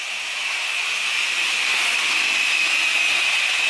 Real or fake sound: real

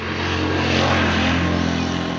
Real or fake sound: real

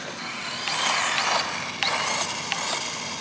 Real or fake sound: real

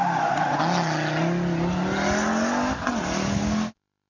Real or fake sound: real